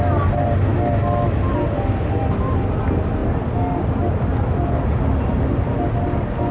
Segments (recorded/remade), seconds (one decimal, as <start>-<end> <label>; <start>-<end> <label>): 0.0-6.5 recorded